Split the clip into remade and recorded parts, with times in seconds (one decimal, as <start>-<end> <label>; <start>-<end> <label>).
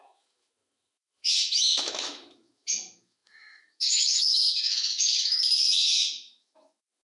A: 0.0-7.1 remade